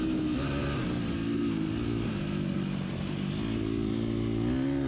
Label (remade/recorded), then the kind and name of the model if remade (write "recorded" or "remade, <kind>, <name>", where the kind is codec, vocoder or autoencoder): recorded